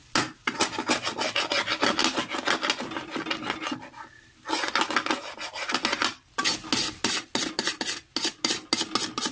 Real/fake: real